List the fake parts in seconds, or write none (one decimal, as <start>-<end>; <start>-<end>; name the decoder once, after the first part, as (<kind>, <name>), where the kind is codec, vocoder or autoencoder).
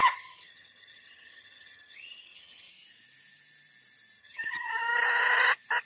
0.0-2.7 (vocoder, HiFi-GAN); 4.2-4.7